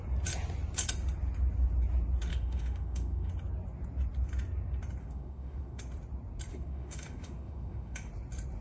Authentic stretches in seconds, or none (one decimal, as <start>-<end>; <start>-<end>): 0.0-2.3; 3.3-5.0; 5.8-6.5; 8.1-8.6